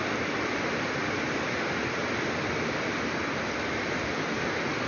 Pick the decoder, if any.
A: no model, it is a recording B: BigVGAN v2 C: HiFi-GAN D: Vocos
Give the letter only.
B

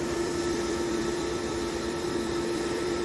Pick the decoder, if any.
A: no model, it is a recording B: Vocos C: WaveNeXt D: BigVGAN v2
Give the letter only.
D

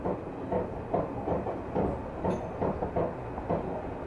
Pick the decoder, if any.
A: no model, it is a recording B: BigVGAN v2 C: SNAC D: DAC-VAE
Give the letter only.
A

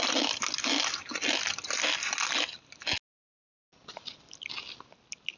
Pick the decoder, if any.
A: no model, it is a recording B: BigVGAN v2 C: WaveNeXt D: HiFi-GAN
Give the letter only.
A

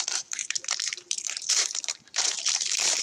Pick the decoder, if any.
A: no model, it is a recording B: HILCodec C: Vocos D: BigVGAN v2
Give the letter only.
D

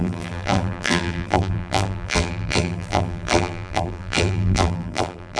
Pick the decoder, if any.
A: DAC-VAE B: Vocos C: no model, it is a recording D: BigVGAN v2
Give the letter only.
D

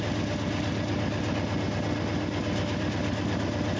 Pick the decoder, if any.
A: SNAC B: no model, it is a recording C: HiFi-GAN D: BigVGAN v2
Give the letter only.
B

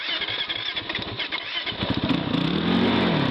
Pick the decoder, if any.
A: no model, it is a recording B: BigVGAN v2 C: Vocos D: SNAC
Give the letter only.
A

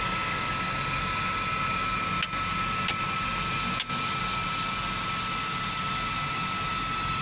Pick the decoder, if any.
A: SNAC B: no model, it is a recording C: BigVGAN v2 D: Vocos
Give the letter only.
B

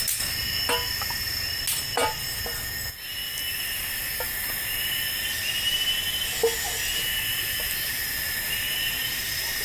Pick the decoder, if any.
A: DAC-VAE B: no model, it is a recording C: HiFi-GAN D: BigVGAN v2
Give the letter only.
B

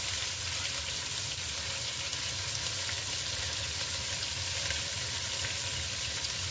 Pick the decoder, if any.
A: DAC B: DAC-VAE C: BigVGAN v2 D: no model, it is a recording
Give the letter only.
C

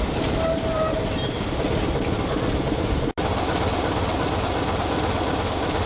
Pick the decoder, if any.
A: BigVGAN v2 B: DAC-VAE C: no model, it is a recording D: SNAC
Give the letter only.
C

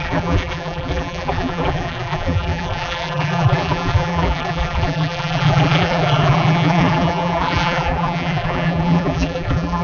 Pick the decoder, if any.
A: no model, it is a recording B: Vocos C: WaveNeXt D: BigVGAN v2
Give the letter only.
D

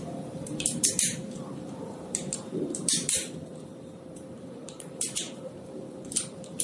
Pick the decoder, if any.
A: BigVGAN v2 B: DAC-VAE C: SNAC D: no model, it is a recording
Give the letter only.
A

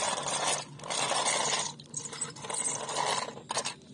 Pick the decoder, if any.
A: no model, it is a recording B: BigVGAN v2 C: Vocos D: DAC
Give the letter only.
A